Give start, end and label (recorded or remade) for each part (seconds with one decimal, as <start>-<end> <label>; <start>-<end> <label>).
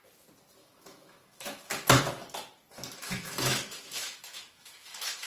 0.0-0.6 recorded; 0.6-2.0 remade; 2.0-3.0 recorded; 3.0-5.3 remade